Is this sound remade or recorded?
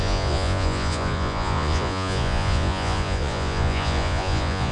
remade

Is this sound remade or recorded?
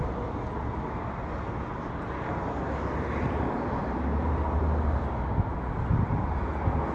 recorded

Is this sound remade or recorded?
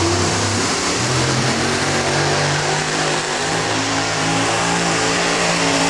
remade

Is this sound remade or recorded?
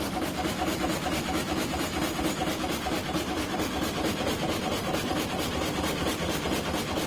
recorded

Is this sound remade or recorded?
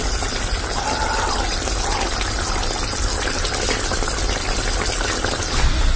recorded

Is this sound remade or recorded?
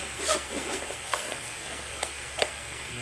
remade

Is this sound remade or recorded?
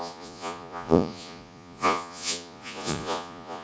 remade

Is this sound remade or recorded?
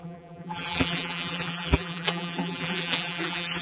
remade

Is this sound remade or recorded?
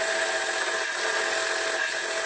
recorded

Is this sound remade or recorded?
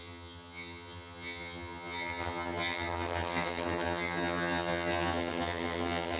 remade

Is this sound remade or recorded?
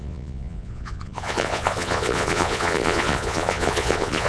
remade